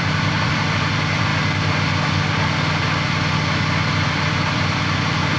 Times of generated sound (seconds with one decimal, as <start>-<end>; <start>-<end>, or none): 0.0-1.3; 3.9-5.4